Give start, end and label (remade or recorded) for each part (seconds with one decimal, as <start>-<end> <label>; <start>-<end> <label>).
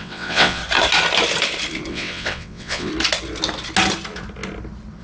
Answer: 0.0-0.6 remade; 0.6-1.9 recorded; 1.9-2.9 remade; 2.9-5.0 recorded